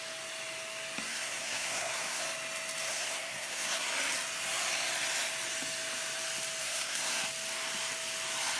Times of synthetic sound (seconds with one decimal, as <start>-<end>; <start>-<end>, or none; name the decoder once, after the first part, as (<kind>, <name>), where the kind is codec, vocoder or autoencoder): 1.1-2.2 (codec, SNAC); 2.9-3.9; 6.6-7.2